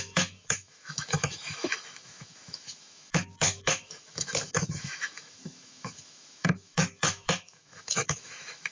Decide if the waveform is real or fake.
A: fake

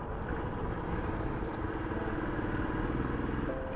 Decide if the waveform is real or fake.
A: real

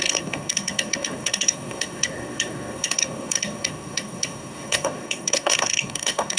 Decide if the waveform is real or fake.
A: fake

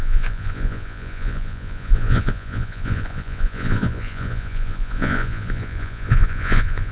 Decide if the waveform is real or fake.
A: fake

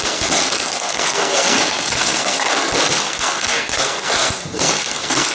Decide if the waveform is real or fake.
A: fake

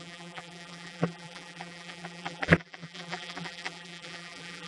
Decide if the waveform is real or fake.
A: fake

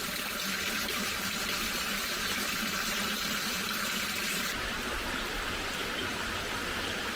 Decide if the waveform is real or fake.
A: fake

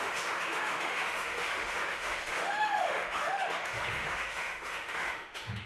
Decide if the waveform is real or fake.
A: fake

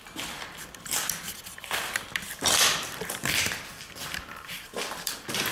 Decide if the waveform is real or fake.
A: fake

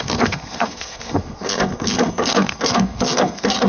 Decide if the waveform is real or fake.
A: fake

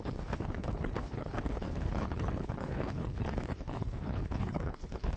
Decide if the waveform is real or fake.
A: fake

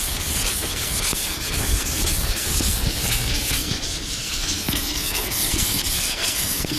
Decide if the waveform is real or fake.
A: fake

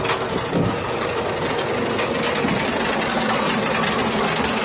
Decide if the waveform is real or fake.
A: real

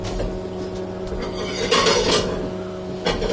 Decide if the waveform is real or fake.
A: real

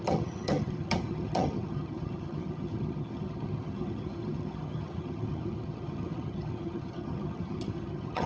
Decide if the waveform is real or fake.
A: fake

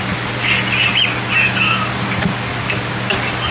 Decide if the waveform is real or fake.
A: real